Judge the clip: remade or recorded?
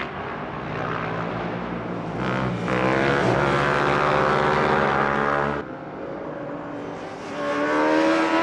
recorded